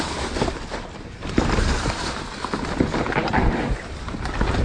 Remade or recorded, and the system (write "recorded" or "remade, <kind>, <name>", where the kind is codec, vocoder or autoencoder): remade, vocoder, BigVGAN v2